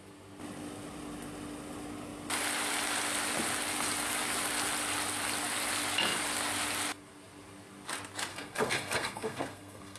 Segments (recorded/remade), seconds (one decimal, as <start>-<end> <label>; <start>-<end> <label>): 0.0-8.3 recorded; 8.3-10.0 remade